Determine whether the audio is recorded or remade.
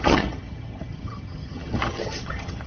remade